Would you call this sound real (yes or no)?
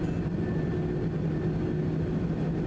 yes